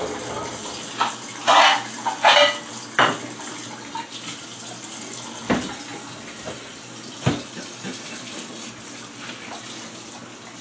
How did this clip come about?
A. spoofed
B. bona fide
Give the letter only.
B